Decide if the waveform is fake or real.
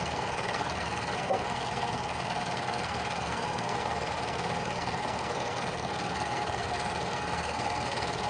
fake